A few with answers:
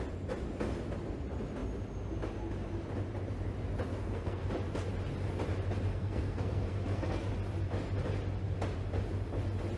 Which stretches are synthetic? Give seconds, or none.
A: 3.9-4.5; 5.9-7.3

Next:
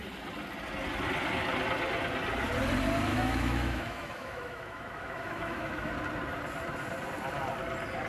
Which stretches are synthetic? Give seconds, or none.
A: 3.1-5.9

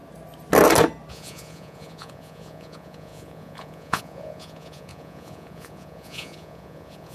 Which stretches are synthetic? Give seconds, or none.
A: 1.1-7.1

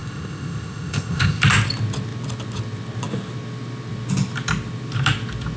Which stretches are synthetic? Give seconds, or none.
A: 0.0-1.4

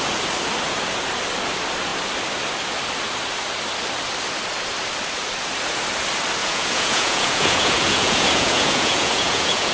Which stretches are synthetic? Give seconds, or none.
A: 6.4-9.7